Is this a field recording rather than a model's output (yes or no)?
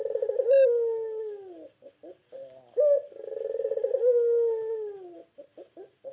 yes